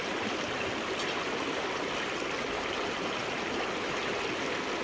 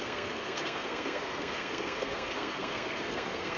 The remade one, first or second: second